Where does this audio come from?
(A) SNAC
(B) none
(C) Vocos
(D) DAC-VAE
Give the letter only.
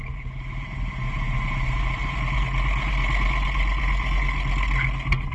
B